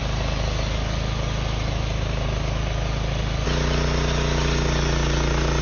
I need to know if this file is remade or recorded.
recorded